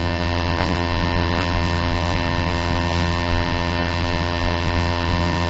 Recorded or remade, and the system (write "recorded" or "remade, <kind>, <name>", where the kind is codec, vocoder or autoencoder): remade, vocoder, BigVGAN v2